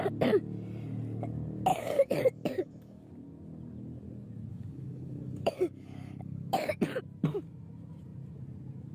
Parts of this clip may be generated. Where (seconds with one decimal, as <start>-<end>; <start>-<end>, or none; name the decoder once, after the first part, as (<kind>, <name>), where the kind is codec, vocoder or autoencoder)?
1.7-3.1 (codec, DAC); 4.5-7.0

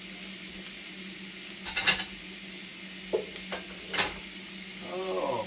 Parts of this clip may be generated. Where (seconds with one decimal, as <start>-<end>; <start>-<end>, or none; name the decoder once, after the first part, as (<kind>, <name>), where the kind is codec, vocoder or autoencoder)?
none

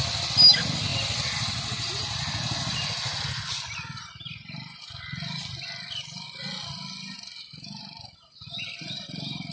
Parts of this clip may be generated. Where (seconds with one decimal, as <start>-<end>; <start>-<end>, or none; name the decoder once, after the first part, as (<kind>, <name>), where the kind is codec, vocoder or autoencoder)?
none

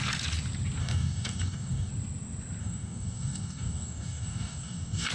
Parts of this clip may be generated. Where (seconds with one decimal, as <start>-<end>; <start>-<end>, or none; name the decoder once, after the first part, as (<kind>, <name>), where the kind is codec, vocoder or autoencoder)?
0.8-1.9 (codec, DAC); 2.6-5.1